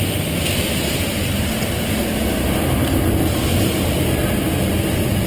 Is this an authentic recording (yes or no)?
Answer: yes